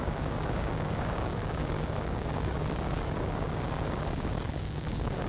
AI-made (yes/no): yes